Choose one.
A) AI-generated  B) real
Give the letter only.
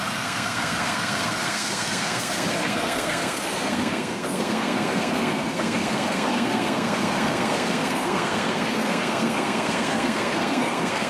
A